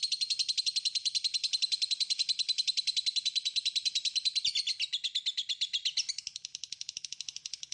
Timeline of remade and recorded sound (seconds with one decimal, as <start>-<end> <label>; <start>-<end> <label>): 0.0-7.7 recorded